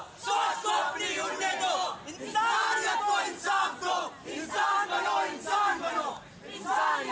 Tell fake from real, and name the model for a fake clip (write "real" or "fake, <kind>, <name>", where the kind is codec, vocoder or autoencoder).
real